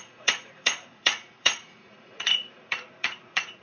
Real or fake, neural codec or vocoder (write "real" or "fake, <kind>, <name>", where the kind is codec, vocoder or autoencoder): fake, vocoder, Vocos